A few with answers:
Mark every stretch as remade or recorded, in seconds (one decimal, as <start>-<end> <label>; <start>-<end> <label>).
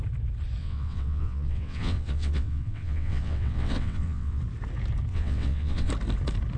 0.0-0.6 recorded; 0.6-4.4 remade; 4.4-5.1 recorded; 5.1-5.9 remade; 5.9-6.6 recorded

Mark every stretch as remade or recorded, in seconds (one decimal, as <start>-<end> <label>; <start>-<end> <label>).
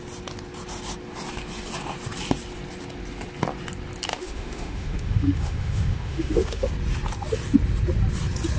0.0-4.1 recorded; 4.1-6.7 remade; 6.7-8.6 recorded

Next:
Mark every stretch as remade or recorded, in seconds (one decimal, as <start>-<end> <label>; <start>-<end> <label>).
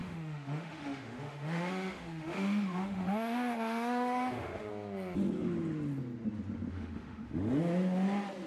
0.0-4.7 remade; 4.7-6.7 recorded; 6.7-7.6 remade; 7.6-8.5 recorded